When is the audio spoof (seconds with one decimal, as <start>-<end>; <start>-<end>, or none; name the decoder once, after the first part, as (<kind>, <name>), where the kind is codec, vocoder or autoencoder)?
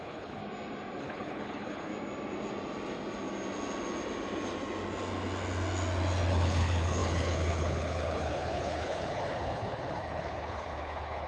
0.0-0.4 (codec, HILCodec); 1.0-1.9; 6.3-11.3